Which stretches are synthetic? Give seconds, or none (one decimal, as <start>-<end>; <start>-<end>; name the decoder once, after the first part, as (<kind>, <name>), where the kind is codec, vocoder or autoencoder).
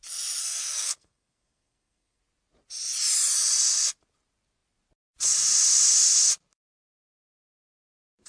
0.4-2.2 (codec, SNAC)